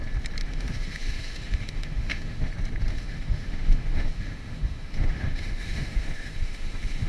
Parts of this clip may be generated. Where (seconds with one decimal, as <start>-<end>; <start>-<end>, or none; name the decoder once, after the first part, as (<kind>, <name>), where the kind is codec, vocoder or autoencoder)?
0.4-2.5 (autoencoder, DAC-VAE); 2.9-7.1

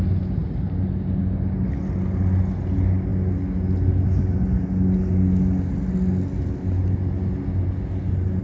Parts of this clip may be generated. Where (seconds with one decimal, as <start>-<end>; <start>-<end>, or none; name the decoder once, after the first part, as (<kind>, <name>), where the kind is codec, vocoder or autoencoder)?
none

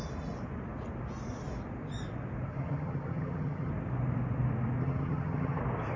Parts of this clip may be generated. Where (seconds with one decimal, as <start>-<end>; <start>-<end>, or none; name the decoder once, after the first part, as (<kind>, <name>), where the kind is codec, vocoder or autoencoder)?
2.5-3.7 (vocoder, HiFi-GAN); 4.8-5.6

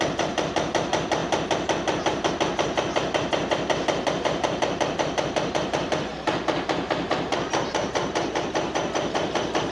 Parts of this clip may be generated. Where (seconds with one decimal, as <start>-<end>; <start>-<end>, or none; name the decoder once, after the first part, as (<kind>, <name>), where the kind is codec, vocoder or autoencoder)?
0.0-1.2 (vocoder, BigVGAN v2); 2.3-9.7